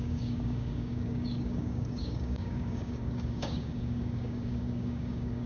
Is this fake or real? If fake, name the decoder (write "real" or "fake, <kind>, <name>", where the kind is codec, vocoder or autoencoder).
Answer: fake, codec, DAC